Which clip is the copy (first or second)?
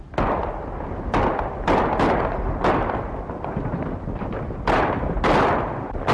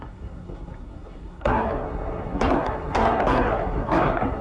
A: second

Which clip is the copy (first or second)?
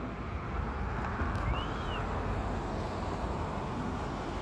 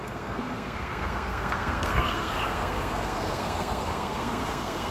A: second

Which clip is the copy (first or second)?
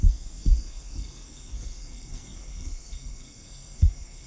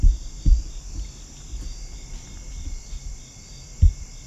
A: first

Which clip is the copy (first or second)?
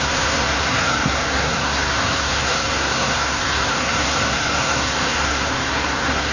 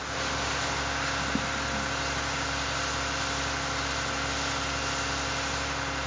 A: first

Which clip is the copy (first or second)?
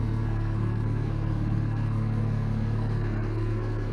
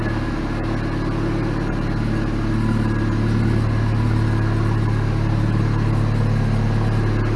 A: first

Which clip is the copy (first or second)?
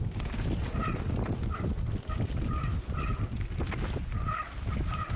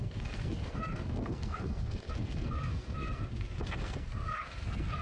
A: second